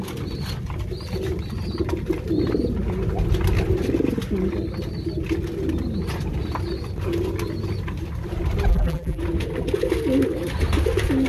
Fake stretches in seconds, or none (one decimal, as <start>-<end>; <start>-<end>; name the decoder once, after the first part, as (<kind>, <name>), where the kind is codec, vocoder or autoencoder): 8.7-9.2 (vocoder, BigVGAN v2)